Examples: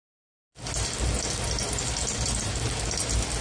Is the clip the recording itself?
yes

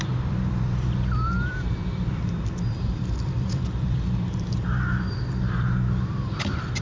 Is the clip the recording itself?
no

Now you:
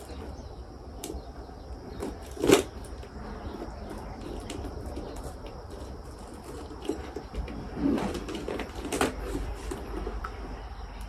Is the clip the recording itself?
no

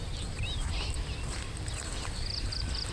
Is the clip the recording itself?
yes